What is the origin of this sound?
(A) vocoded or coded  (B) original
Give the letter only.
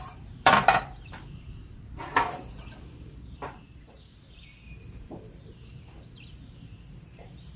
A